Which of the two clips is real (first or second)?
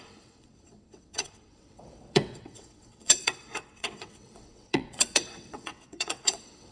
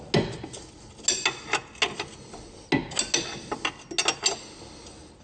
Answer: second